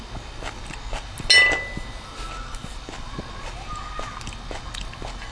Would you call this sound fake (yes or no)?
no